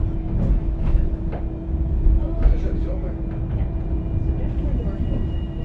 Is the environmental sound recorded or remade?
recorded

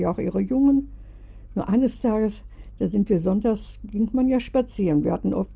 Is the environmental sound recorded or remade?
recorded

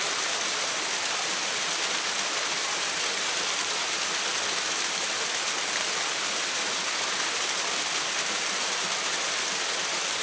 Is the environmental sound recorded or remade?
recorded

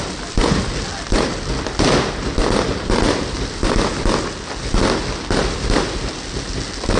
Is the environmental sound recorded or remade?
recorded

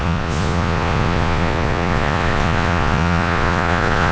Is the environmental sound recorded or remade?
remade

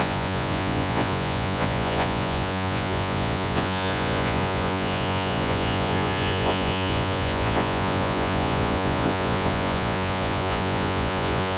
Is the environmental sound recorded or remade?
remade